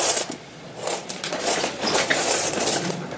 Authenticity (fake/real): fake